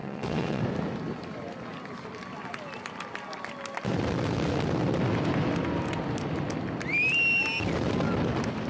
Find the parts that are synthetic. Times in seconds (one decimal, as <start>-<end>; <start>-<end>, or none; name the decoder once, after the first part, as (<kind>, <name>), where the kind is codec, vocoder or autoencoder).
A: 0.0-0.6 (vocoder, WaveNeXt)